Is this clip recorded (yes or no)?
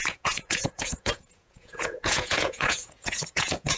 no